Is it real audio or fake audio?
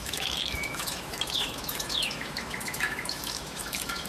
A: fake